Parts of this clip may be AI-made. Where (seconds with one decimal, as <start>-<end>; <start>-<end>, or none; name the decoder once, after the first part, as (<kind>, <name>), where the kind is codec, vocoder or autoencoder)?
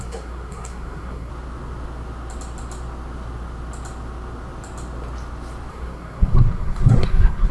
0.0-1.3 (codec, SNAC); 5.7-7.5